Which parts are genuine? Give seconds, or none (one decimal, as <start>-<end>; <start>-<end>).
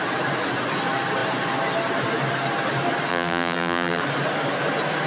0.0-3.1; 4.0-5.1